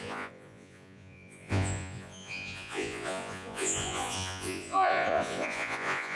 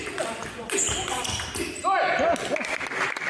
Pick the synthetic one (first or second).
first